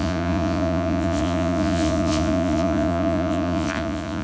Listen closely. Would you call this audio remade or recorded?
remade